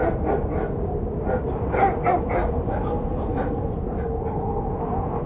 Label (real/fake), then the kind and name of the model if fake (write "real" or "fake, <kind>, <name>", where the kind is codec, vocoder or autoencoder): real